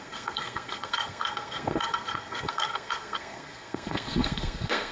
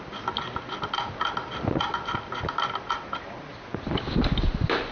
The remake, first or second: first